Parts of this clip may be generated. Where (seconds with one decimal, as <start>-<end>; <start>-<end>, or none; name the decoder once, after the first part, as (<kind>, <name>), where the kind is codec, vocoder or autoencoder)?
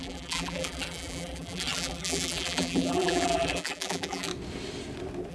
0.0-4.3 (vocoder, BigVGAN v2)